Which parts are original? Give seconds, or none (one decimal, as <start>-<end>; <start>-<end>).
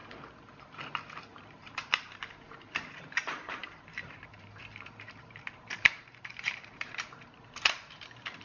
0.0-1.2